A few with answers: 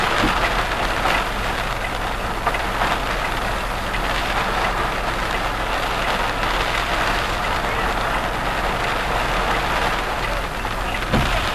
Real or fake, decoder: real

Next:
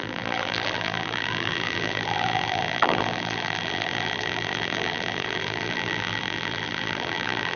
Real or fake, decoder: fake, vocoder, BigVGAN v2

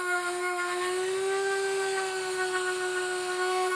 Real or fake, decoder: fake, autoencoder, DAC-VAE